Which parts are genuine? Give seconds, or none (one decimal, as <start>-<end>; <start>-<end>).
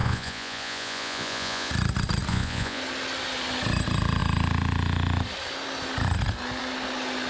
1.7-2.3; 2.8-7.3